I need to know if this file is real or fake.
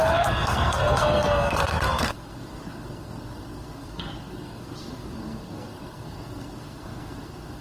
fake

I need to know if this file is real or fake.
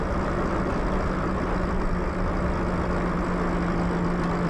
real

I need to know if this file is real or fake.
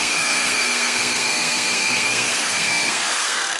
fake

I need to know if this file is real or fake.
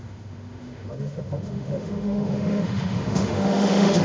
fake